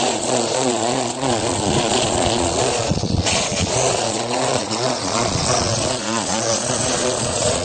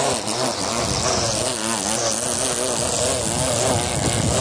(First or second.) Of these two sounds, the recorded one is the second